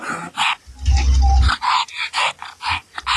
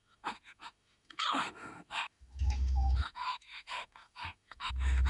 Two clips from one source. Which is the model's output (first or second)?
second